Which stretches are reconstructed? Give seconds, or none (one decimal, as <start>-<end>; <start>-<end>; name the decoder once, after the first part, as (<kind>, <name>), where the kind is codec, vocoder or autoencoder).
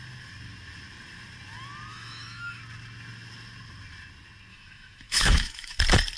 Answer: 1.9-2.6 (autoencoder, DAC-VAE); 4.5-5.8